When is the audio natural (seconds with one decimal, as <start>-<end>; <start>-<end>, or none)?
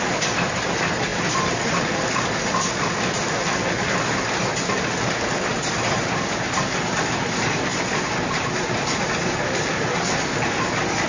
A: 0.0-1.1; 1.6-5.5; 6.7-7.7; 8.5-11.1